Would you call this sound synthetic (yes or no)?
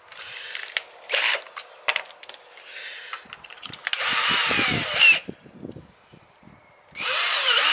yes